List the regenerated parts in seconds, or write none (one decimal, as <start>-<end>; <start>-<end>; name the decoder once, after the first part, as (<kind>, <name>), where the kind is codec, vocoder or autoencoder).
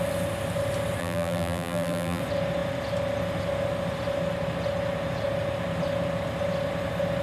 1.0-2.2 (vocoder, BigVGAN v2)